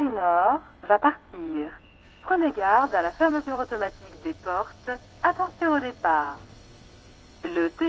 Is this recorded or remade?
remade